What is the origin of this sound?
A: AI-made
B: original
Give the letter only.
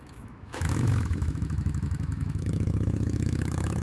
A